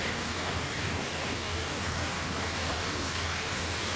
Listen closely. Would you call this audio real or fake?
fake